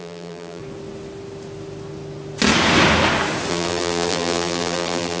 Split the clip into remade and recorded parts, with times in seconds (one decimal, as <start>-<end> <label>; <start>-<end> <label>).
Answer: 0.0-0.6 remade; 0.6-3.5 recorded; 3.5-5.2 remade